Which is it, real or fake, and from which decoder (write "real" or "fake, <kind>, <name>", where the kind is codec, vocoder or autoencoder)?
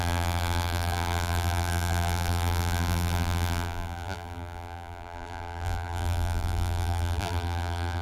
fake, vocoder, BigVGAN v2